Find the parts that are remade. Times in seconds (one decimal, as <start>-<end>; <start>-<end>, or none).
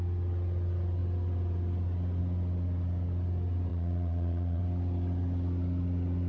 3.7-4.6